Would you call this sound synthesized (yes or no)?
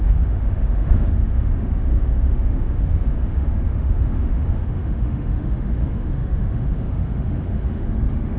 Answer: yes